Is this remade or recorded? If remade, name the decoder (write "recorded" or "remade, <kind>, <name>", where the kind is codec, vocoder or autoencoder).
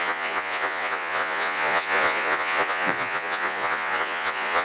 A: remade, vocoder, Vocos